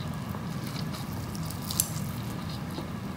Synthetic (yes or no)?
no